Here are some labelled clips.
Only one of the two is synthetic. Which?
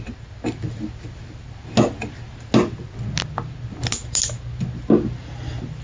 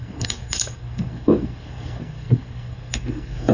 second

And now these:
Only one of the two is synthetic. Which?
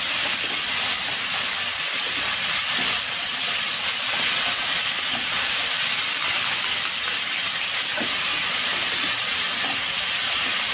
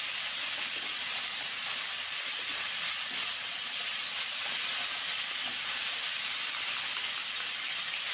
first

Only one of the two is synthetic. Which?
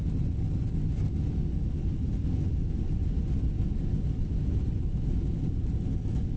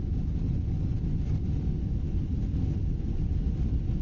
second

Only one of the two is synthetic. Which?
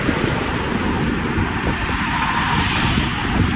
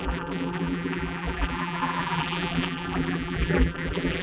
second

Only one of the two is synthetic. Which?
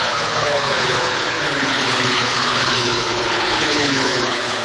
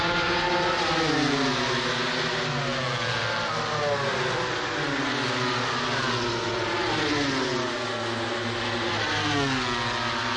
first